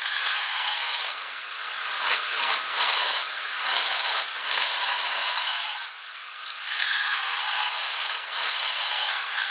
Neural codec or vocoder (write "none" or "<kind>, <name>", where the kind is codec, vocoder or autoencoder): codec, SNAC